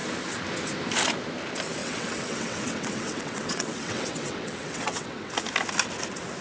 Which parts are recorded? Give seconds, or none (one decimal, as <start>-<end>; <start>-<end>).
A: 0.0-1.8; 5.3-6.4